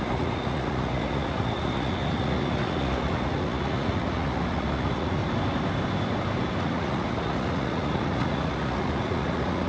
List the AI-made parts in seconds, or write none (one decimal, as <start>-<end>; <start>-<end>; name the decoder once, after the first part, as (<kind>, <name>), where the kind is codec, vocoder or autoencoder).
0.0-5.2 (vocoder, Vocos); 6.6-9.7